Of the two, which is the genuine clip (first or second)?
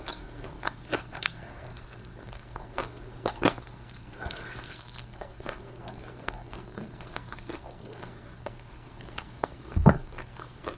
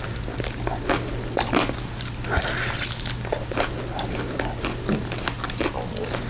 second